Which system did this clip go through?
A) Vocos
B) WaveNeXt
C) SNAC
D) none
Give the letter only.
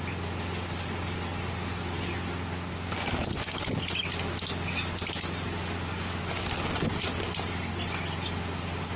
D